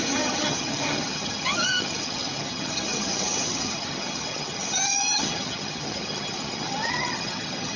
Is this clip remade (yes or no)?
yes